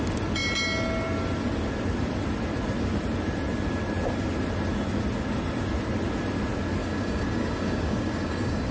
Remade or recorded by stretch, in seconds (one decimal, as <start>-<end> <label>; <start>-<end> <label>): 0.0-6.8 recorded; 6.8-8.7 remade